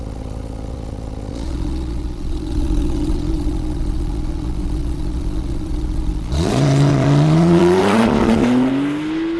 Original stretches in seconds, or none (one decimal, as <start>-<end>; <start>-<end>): 8.7-9.4